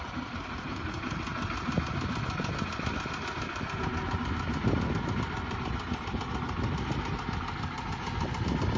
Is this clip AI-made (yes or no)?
no